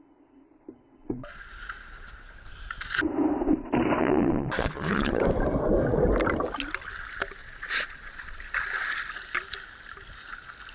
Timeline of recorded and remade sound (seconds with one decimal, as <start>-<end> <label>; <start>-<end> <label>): 0.0-1.0 recorded; 1.0-2.3 remade; 2.3-4.0 recorded; 4.0-5.2 remade; 5.2-7.4 recorded; 7.4-8.4 remade; 8.4-10.7 recorded